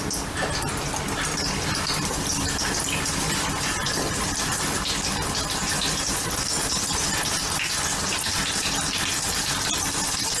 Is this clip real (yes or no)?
yes